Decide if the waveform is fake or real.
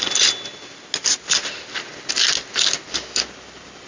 real